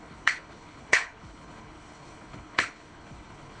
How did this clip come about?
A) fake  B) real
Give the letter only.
A